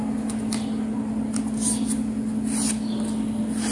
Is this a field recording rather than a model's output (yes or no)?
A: yes